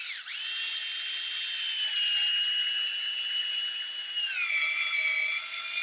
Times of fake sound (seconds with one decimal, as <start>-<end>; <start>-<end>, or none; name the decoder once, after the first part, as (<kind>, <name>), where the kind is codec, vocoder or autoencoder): none